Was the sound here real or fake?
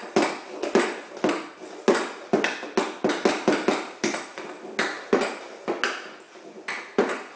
real